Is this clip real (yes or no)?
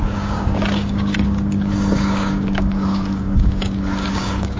no